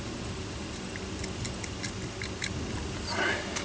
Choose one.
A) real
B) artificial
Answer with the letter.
A